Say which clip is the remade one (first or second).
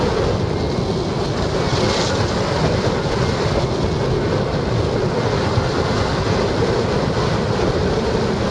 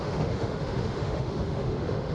second